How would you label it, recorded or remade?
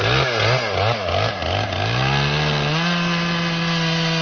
recorded